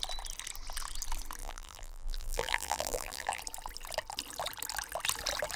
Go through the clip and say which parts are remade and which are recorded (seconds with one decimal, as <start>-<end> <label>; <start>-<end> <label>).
0.0-1.4 recorded; 1.4-3.4 remade; 3.4-5.6 recorded